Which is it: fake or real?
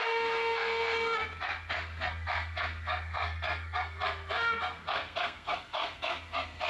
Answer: fake